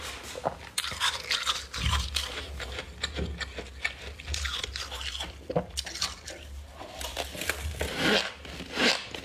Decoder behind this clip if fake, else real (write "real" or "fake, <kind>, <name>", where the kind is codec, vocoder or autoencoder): real